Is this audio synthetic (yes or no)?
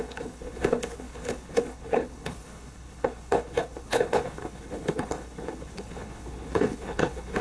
yes